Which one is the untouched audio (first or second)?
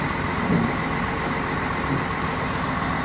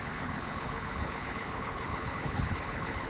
first